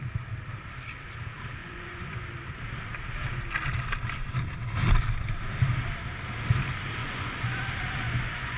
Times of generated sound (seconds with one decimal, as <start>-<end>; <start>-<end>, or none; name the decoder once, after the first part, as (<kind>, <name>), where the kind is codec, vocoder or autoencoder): 1.6-2.2 (vocoder, Vocos); 7.0-7.6; 8.0-8.6